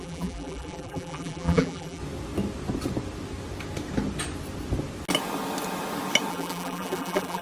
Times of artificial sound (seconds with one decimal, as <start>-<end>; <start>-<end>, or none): 0.0-2.0; 6.3-7.4